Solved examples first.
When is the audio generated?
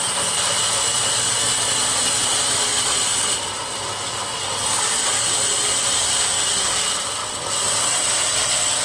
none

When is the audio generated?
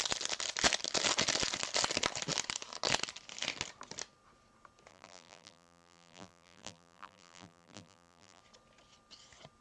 4.9-8.4 (vocoder, BigVGAN v2)